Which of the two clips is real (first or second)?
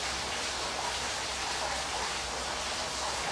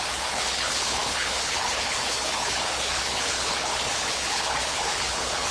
first